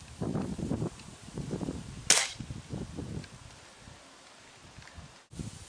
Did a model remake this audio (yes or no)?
no